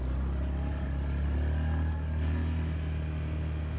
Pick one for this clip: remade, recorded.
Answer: recorded